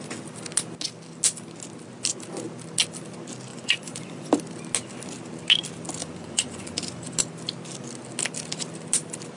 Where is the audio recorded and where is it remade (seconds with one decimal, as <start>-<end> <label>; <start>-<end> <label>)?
0.0-3.5 recorded; 3.5-4.3 remade; 4.3-6.0 recorded; 6.0-7.2 remade; 7.2-9.4 recorded